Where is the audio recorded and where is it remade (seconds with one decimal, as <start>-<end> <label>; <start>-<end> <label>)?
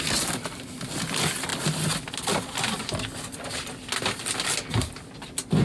0.0-5.6 recorded